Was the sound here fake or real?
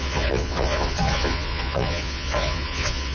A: fake